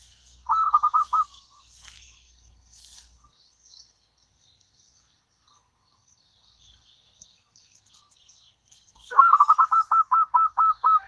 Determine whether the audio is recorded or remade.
remade